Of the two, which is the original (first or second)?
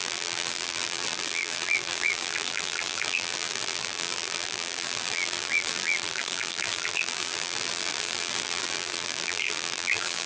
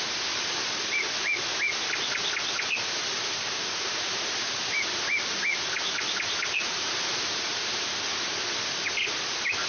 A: second